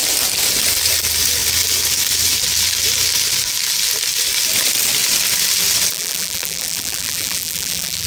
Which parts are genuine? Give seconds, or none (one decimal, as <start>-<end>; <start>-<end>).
0.0-5.9